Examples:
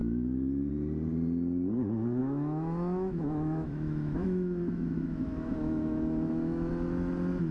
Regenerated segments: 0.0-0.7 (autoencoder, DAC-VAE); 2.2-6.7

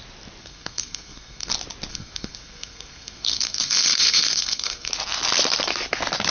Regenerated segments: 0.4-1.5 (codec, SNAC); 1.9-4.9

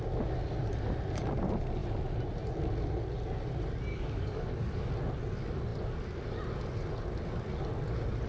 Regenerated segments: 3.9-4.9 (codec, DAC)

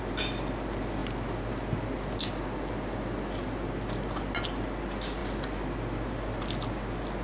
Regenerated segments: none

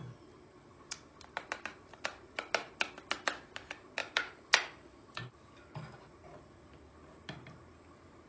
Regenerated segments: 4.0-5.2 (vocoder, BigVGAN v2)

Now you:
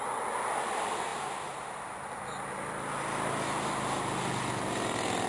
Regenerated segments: none

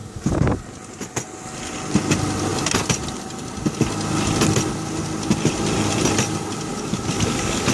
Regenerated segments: 0.0-0.6 (codec, DAC); 6.7-7.7

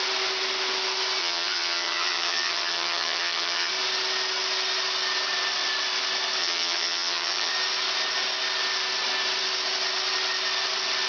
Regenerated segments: 1.2-3.7 (vocoder, HiFi-GAN); 6.4-7.5